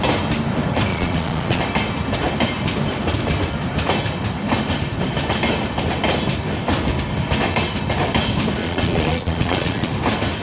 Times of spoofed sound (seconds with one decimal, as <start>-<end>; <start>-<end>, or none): 0.9-1.6; 8.6-9.9